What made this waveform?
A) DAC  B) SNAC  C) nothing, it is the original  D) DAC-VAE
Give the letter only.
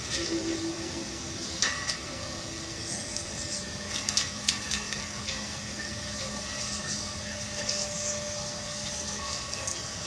B